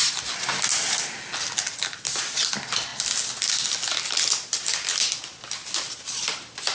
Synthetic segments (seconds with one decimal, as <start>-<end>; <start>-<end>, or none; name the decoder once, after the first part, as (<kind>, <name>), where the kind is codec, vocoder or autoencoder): none